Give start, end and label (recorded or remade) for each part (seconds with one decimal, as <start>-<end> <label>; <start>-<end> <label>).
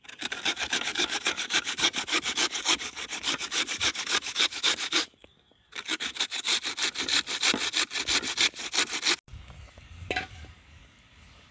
0.0-6.5 remade; 6.5-9.7 recorded; 9.7-11.5 remade